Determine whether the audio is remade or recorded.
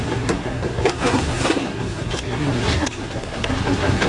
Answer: remade